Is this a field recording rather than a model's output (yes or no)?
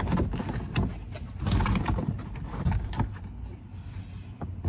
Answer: yes